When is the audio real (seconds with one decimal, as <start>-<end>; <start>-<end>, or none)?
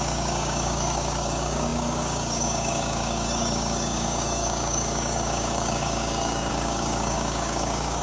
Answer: none